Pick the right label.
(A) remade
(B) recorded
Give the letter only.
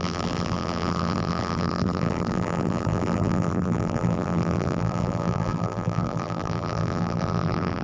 A